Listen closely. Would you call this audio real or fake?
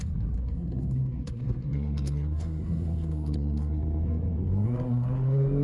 fake